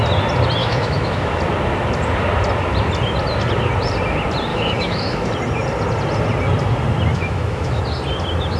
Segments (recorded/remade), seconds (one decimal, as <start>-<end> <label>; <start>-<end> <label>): 0.0-0.6 recorded; 0.6-1.4 remade; 1.4-4.5 recorded; 4.5-5.3 remade; 5.3-7.1 recorded; 7.1-7.8 remade; 7.8-8.6 recorded